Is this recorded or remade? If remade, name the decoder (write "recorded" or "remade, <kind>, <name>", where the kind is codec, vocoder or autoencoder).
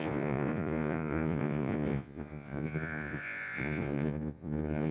remade, vocoder, Vocos